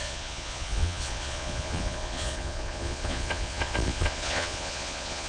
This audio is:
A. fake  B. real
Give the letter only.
A